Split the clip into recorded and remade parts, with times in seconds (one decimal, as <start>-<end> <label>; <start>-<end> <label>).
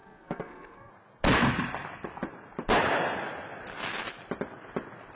0.0-0.9 remade; 0.9-5.2 recorded